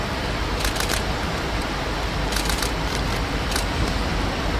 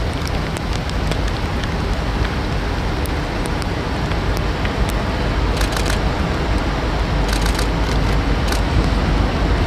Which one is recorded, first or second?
second